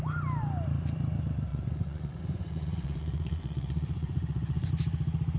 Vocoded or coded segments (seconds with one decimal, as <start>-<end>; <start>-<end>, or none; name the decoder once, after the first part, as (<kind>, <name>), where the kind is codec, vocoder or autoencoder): 1.5-4.7 (vocoder, Vocos)